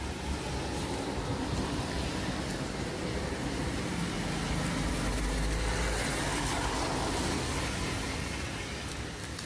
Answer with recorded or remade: recorded